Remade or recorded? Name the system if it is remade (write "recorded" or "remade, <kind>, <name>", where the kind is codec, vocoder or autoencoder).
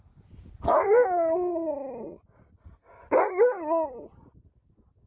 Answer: recorded